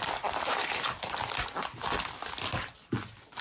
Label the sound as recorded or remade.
recorded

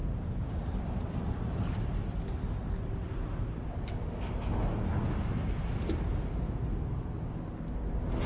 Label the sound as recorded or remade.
recorded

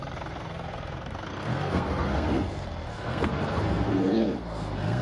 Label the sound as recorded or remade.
remade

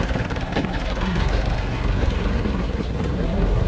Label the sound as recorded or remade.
remade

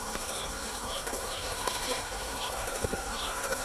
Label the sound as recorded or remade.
remade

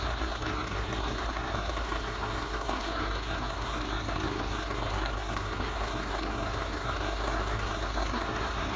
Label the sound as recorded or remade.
remade